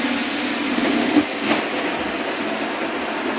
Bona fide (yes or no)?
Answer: yes